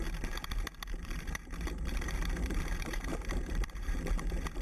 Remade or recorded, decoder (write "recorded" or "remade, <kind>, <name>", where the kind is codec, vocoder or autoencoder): remade, vocoder, BigVGAN v2